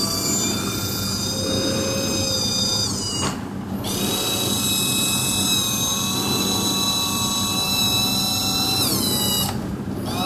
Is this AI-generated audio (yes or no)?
no